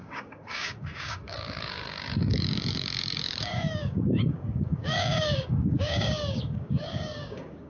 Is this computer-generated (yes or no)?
yes